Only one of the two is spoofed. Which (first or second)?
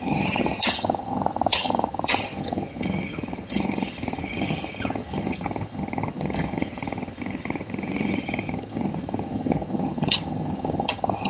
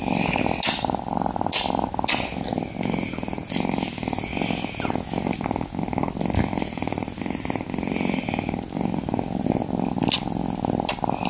first